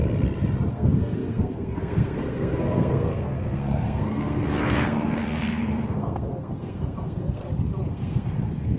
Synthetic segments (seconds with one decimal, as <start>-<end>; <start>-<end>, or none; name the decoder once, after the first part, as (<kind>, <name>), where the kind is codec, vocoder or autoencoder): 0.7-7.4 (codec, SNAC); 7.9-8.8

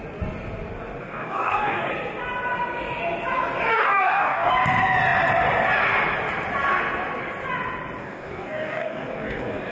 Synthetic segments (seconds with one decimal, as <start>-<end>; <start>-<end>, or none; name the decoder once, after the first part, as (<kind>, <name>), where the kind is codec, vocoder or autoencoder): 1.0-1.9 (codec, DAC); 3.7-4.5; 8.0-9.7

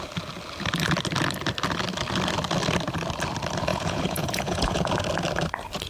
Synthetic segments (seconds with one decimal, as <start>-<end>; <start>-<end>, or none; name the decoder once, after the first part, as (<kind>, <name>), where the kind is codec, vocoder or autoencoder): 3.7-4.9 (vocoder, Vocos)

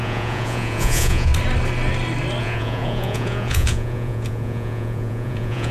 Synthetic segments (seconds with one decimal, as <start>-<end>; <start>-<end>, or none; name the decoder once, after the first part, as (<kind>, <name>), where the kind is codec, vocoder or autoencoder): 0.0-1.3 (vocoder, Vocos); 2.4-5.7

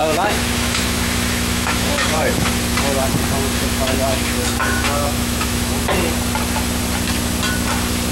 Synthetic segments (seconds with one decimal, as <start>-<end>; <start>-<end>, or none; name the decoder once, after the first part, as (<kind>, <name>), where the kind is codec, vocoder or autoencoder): 0.0-2.5 (autoencoder, DAC-VAE); 3.6-5.8